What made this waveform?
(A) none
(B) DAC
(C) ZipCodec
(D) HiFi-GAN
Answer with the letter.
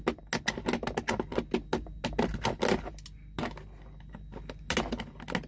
A